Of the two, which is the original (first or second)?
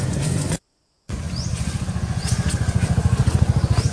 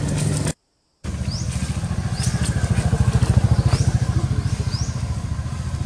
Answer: second